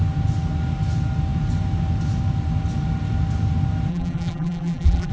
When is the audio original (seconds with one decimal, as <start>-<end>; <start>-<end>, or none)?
0.0-3.9